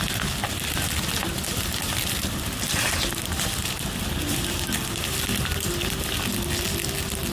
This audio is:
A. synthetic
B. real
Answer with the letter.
B